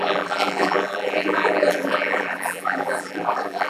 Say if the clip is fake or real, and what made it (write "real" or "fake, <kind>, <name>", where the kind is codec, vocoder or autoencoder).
fake, vocoder, BigVGAN v2